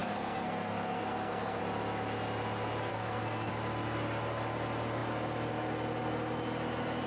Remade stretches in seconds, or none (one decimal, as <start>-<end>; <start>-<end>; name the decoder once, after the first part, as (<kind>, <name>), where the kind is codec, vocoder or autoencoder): 0.0-1.6 (codec, SNAC); 2.9-3.5